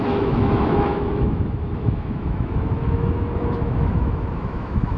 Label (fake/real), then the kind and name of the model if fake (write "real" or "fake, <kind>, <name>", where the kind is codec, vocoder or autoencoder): fake, autoencoder, DAC-VAE